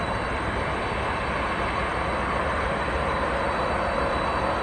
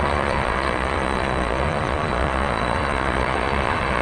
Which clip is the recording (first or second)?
first